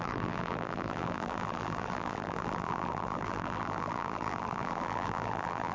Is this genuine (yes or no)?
no